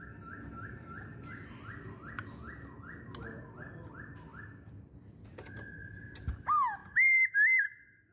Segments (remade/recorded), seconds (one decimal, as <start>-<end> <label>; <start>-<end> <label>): 0.0-8.1 recorded